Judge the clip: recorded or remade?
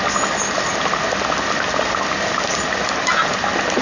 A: recorded